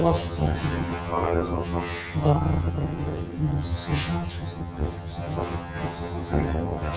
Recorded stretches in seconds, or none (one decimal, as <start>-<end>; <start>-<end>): none